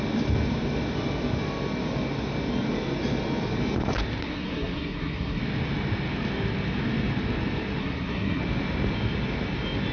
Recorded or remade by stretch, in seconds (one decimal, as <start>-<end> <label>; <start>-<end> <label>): 0.0-4.2 recorded; 4.2-5.4 remade; 5.4-7.8 recorded; 7.8-8.4 remade; 8.4-9.9 recorded